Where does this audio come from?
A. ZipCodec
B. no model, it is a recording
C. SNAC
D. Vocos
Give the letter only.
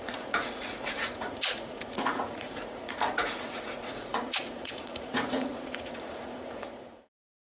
D